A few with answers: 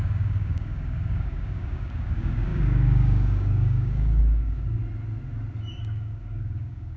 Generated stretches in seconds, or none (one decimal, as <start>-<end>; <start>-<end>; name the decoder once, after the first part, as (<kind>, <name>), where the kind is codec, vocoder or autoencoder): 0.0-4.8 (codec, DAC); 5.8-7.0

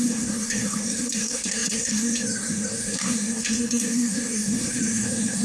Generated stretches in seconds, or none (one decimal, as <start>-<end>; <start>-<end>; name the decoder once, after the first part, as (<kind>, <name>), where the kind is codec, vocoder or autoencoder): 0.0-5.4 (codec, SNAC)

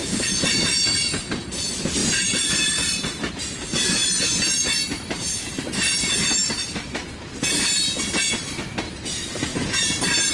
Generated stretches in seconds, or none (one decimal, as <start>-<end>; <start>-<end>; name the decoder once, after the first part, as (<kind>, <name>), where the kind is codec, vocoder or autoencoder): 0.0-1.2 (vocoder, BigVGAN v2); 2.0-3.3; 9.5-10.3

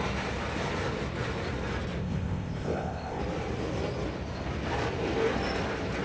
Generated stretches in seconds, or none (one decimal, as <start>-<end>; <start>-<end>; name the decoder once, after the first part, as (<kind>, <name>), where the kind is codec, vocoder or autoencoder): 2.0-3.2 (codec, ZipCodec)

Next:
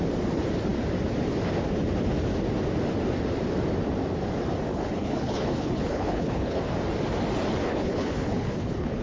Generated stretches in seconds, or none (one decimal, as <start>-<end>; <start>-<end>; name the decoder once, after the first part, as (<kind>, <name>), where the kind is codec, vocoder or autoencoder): 4.7-6.6 (codec, HILCodec); 7.6-9.0

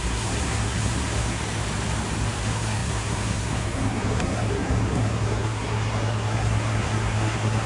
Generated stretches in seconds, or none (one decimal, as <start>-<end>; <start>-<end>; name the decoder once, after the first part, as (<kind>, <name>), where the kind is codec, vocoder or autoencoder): 0.0-1.4 (codec, SNAC); 2.4-7.7

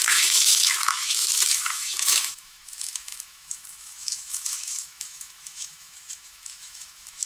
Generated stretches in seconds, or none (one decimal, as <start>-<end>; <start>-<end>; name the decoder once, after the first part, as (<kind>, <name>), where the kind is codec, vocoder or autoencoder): 0.0-7.3 (autoencoder, DAC-VAE)

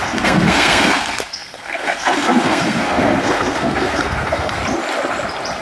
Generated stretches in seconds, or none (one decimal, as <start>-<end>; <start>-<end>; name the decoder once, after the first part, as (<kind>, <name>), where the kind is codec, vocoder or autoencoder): 0.0-4.6 (codec, SNAC)